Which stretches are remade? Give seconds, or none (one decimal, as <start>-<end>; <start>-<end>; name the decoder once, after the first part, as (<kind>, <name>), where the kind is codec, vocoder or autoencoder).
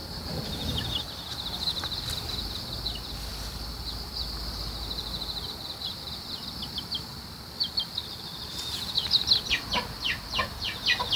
none